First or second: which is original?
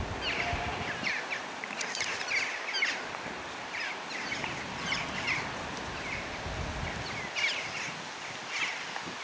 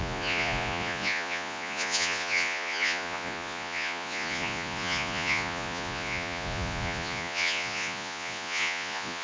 first